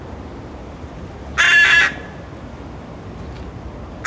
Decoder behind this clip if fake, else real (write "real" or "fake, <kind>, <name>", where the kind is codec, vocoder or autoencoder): real